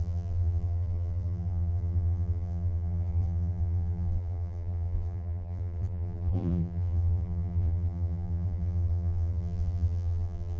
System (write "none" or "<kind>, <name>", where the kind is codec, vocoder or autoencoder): vocoder, BigVGAN v2